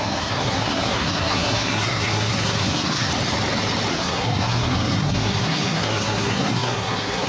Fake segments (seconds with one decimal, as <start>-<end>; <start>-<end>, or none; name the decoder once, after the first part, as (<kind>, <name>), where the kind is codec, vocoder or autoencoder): 0.0-3.1 (codec, SNAC); 3.9-7.3